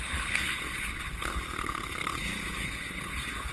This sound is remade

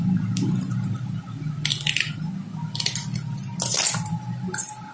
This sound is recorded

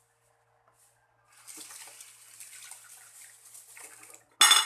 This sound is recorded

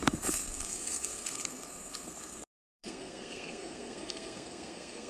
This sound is remade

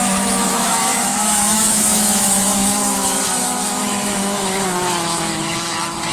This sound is remade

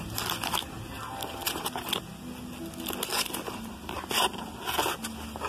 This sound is recorded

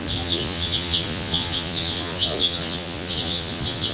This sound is remade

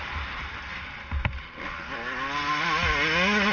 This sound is recorded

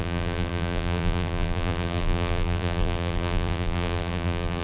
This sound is remade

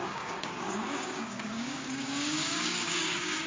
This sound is remade